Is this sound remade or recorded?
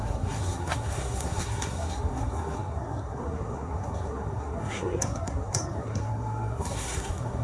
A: remade